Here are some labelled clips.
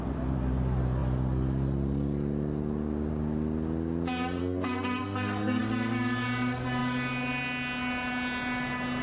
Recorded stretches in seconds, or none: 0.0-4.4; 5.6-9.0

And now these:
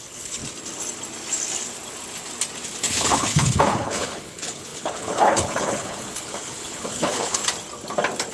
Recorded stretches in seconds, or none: 0.4-2.8; 7.4-8.3